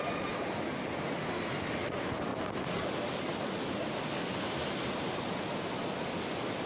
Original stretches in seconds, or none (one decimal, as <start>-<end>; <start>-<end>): 0.0-6.7